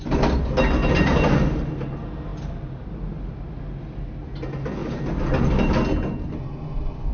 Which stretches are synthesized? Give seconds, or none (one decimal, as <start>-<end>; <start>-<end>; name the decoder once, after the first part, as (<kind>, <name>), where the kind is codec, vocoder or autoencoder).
none